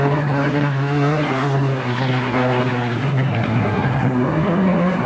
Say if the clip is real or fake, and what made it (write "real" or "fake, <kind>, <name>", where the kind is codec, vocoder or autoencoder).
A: fake, codec, SNAC